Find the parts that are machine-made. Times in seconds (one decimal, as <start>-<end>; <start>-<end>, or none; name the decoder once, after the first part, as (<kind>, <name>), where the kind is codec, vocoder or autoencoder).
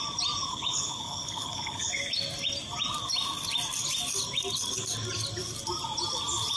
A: 0.5-1.9 (codec, HILCodec)